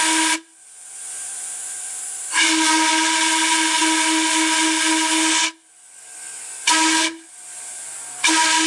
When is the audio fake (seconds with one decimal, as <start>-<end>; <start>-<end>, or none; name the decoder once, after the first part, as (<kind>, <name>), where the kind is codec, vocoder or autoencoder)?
none